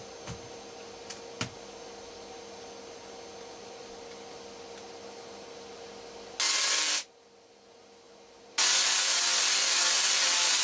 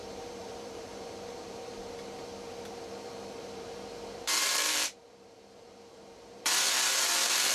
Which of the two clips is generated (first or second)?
second